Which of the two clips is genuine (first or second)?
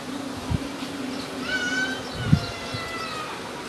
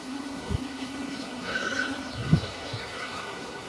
first